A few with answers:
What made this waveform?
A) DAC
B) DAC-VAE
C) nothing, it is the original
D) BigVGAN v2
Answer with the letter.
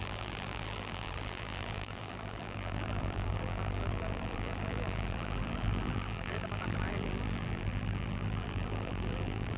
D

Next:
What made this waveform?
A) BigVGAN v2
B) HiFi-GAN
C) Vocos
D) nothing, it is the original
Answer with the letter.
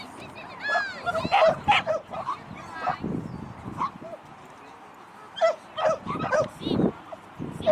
D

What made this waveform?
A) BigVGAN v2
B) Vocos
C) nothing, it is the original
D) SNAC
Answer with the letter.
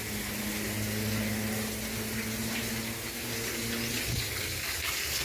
C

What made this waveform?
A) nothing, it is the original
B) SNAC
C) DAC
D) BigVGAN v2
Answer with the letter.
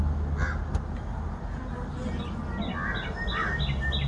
A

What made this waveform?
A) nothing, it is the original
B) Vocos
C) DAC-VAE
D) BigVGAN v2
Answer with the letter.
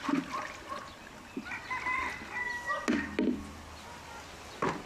A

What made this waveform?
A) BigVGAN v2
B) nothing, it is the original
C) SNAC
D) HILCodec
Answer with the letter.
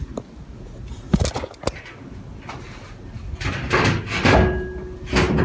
B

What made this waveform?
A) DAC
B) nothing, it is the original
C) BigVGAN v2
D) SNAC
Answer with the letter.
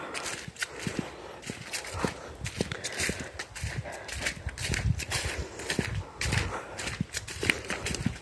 C